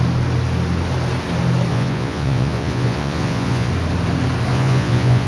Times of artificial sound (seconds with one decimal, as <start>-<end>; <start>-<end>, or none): 1.7-3.7; 4.5-5.3